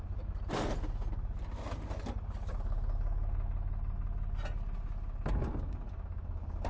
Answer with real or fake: real